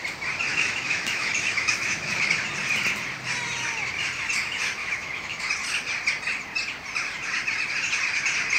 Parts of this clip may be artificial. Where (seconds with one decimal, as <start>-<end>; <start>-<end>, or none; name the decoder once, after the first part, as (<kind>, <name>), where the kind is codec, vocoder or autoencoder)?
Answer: 0.5-2.3 (autoencoder, DAC-VAE); 4.8-5.5